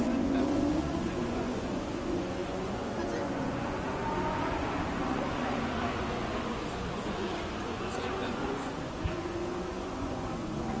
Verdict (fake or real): fake